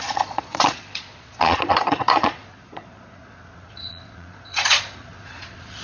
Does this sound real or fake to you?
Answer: fake